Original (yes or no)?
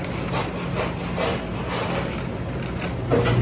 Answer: yes